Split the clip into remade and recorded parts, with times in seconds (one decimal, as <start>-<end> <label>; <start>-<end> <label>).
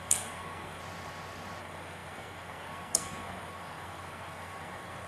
0.0-0.8 remade; 0.8-1.6 recorded; 1.6-5.1 remade